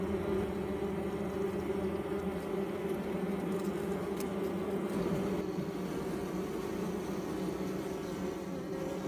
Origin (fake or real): real